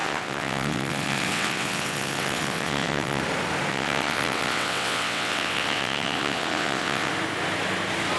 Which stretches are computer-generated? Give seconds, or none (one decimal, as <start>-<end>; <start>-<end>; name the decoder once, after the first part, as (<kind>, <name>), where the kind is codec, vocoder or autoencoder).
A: 0.0-3.2 (vocoder, WaveNeXt); 3.7-7.1